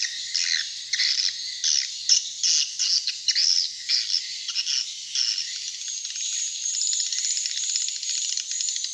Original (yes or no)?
yes